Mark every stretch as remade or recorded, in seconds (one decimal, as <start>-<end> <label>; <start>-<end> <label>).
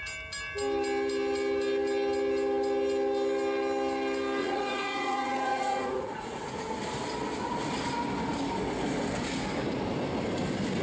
0.0-4.4 recorded; 4.4-6.5 remade; 6.5-10.8 recorded